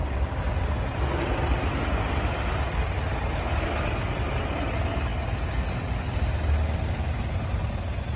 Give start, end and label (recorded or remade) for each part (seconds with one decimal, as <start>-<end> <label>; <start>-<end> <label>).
0.0-8.2 recorded